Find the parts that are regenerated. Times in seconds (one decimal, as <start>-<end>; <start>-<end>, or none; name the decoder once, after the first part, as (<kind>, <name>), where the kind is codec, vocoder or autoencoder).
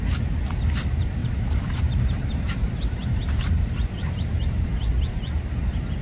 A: 1.2-4.7 (vocoder, BigVGAN v2)